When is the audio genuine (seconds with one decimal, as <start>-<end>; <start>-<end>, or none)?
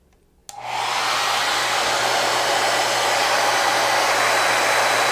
0.0-5.1